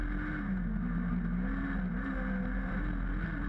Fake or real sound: real